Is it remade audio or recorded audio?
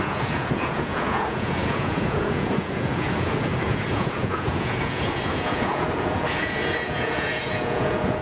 remade